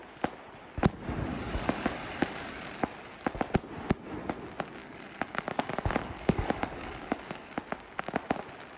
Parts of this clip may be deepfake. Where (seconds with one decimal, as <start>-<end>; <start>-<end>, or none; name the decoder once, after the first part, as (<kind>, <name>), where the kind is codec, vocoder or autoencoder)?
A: 1.3-2.6 (codec, DAC); 4.8-7.5